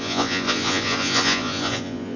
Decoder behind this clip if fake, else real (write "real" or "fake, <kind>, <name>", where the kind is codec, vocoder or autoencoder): fake, vocoder, Vocos